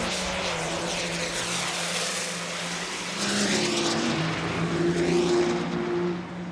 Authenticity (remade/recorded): recorded